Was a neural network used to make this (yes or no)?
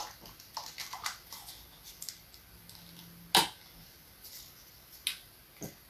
no